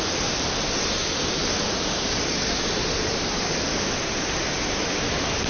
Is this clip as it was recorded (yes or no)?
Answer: yes